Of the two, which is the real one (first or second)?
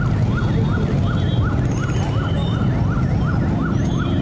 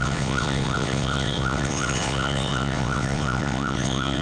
first